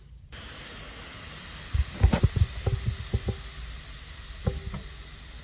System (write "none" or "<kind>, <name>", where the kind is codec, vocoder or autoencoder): none